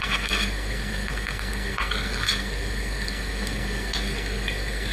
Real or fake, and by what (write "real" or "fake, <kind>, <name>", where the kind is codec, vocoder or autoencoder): fake, codec, SNAC